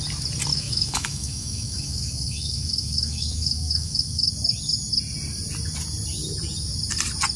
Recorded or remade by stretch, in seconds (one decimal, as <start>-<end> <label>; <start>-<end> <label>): 0.0-0.5 recorded; 0.5-4.3 remade; 4.3-7.4 recorded

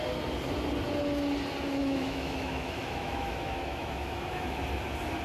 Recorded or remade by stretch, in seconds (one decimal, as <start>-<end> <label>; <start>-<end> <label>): 0.0-1.8 recorded; 1.8-4.6 remade; 4.6-5.2 recorded